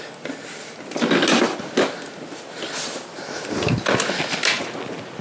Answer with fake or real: real